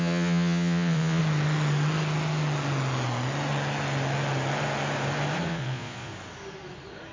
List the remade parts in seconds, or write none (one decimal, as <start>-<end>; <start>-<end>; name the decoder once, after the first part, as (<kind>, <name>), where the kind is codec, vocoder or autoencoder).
0.0-1.2 (vocoder, Vocos); 5.5-6.1